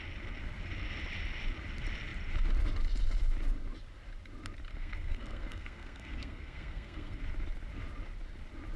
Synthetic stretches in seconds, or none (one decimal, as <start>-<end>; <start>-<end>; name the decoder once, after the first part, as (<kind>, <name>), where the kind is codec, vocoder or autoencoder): 4.7-7.2 (codec, SNAC)